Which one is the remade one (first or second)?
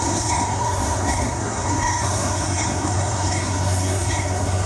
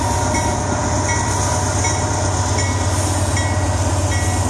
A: first